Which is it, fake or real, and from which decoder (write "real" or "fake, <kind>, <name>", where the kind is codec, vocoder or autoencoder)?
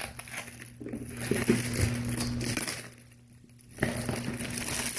real